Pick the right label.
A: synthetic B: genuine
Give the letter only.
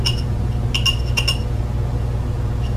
B